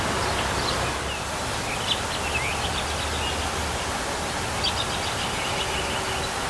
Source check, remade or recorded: recorded